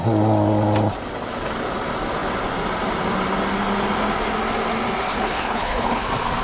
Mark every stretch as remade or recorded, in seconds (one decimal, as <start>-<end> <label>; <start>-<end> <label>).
0.0-5.1 recorded; 5.1-6.0 remade; 6.0-6.4 recorded